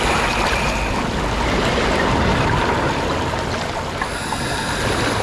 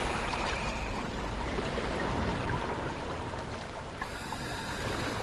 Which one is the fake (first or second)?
second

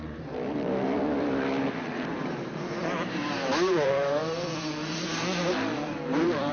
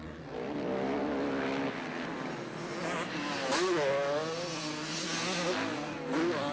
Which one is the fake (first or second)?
first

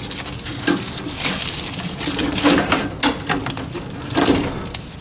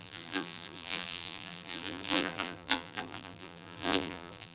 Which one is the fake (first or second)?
second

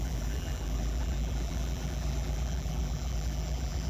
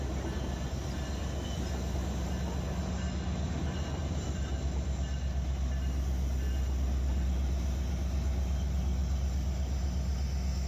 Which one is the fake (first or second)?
first